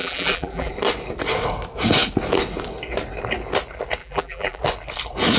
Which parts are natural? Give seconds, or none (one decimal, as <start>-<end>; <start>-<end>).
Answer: 0.7-4.0; 4.6-5.4